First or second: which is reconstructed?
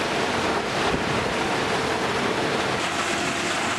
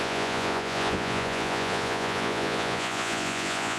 second